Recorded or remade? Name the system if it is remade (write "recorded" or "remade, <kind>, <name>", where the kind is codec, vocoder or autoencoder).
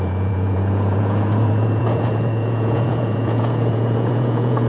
remade, vocoder, Vocos